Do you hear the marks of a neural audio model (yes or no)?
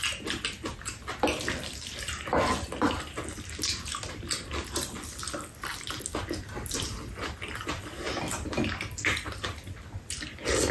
no